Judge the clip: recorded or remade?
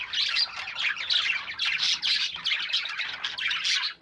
recorded